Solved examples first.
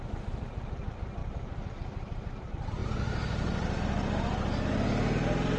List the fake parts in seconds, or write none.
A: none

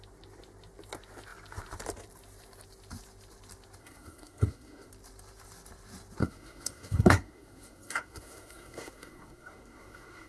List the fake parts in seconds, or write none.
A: 3.8-4.9 (codec, SNAC); 6.2-10.3

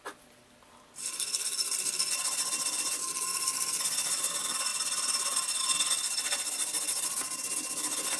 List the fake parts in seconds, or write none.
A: 1.0-2.1 (codec, SNAC); 3.0-3.8

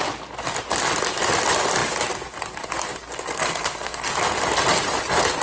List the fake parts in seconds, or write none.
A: 3.3-4.1 (codec, SNAC)

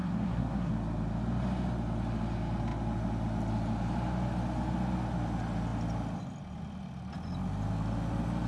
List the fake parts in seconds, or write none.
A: 0.0-0.7 (codec, SNAC)

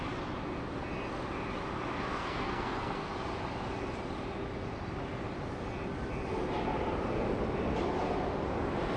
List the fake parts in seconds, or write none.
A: 2.1-3.1 (codec, SNAC)

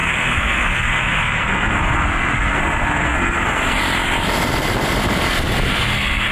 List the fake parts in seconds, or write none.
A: 0.0-3.8 (codec, SNAC); 5.7-6.3